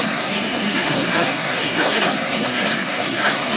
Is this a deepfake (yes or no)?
yes